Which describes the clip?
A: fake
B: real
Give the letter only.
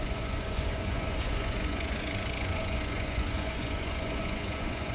A